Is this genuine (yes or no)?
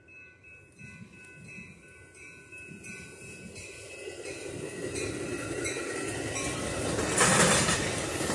yes